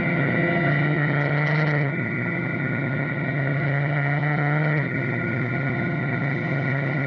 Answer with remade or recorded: remade